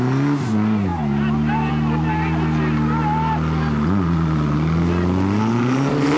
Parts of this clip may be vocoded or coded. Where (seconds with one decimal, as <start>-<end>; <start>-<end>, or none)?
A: none